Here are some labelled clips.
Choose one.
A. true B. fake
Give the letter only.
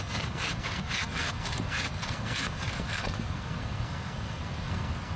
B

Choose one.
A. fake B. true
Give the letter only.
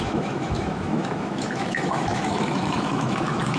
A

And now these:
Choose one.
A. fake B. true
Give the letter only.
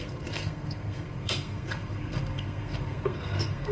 A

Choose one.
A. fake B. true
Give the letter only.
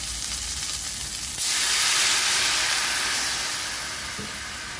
B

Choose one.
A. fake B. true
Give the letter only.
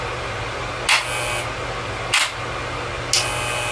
B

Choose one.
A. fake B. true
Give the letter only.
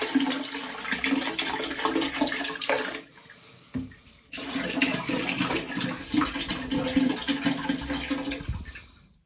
B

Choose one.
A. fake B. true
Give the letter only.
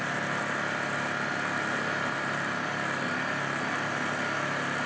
B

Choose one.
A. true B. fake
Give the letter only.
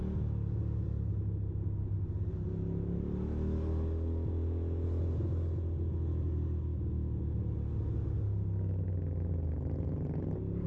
A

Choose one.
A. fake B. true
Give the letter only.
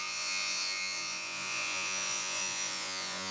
A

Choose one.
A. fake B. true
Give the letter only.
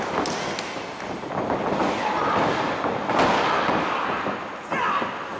B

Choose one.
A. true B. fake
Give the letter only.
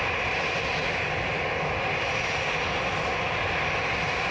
A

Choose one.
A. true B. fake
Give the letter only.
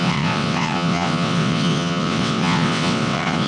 B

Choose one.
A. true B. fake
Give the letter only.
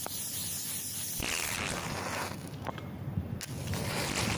A